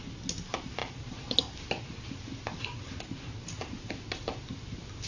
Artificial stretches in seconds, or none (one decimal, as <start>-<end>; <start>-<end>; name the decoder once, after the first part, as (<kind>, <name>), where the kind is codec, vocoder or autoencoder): none